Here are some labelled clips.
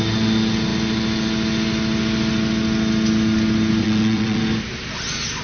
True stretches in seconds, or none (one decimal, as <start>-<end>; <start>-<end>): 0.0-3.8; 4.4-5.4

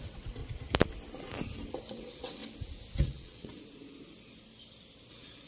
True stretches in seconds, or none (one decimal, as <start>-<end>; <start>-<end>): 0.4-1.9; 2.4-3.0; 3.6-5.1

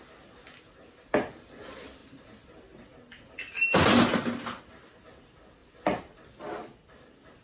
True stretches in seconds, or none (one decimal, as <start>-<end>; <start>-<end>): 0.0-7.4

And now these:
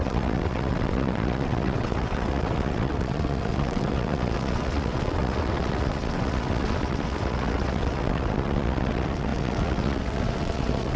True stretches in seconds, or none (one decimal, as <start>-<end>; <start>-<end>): none

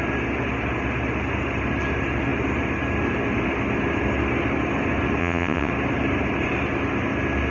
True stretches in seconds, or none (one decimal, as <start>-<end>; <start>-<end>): 0.0-5.2; 5.7-7.5

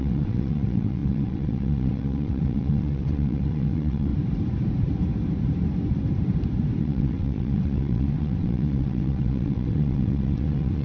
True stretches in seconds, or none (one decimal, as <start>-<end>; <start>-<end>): 4.1-6.8

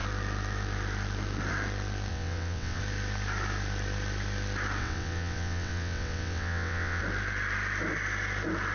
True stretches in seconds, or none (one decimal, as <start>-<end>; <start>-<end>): 0.0-2.1; 2.8-4.8; 7.0-8.7